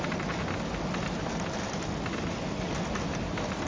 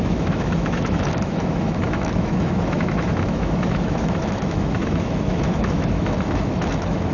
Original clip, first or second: first